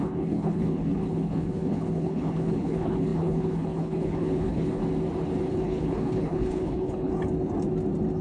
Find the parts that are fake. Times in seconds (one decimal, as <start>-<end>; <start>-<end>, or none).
0.0-4.8; 5.5-7.1